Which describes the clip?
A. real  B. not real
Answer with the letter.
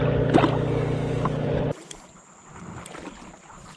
A